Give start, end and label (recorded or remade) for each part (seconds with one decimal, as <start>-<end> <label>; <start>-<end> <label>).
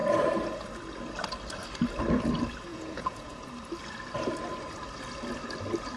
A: 0.0-2.7 recorded; 2.7-3.4 remade; 3.4-6.0 recorded